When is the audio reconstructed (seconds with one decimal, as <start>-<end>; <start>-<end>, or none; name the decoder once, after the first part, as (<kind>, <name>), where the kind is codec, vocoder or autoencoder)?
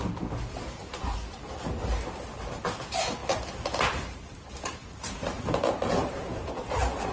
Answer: none